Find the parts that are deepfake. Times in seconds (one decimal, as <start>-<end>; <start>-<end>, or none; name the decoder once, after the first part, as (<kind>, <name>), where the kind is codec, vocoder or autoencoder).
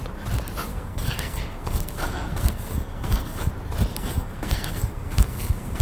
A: 0.7-3.5 (codec, SNAC); 3.9-5.8